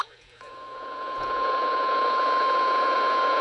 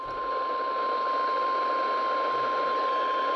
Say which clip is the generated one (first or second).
first